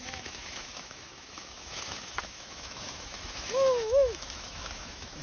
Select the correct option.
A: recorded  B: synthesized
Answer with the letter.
B